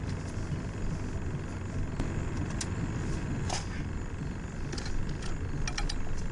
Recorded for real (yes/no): yes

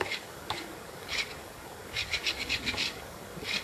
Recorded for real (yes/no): no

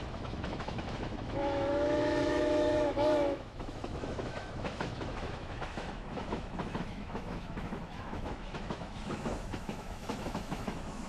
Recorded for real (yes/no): no